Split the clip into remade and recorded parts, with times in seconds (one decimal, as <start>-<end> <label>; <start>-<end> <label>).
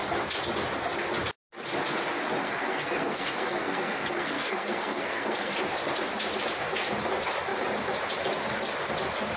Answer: 0.0-2.4 recorded; 2.4-5.5 remade; 5.5-9.4 recorded